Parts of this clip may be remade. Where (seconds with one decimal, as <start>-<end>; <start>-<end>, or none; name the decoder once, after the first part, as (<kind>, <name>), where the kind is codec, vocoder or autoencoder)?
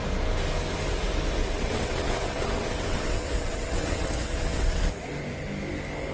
1.4-5.1 (vocoder, WaveNeXt)